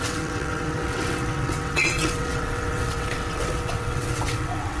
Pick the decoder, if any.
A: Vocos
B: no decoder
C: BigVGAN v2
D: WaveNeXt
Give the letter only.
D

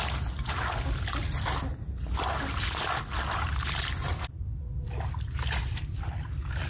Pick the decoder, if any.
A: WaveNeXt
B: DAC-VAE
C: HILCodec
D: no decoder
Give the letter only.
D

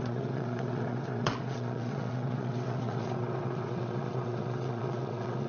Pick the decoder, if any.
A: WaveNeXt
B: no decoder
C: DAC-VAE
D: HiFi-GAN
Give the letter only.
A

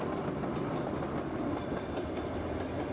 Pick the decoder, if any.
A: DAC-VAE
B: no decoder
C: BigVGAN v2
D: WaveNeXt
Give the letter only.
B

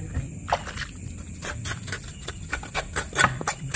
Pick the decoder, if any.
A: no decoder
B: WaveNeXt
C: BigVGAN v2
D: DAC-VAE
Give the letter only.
A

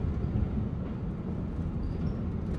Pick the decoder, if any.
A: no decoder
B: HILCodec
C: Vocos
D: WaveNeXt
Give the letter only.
A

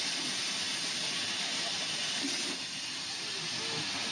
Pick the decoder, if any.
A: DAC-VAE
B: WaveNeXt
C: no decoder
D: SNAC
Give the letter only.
C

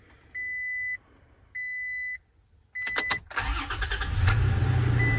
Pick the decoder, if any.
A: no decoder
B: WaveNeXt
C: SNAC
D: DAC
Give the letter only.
A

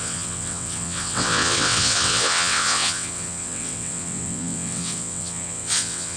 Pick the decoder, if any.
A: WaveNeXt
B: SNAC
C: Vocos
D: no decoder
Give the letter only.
A